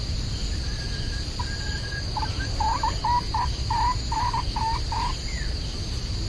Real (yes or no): yes